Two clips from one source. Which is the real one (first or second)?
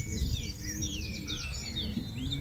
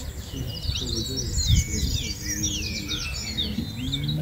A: second